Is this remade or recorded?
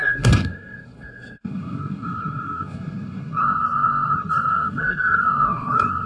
remade